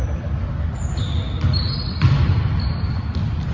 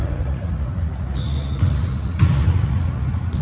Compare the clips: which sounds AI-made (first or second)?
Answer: second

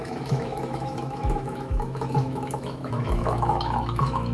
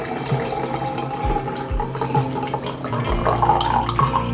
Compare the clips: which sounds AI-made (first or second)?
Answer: first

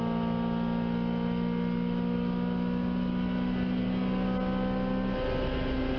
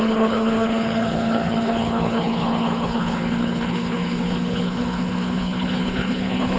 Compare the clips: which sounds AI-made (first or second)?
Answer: second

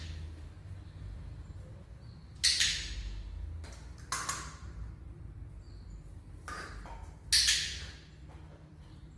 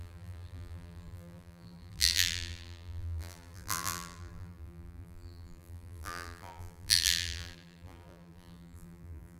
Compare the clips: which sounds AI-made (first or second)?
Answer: second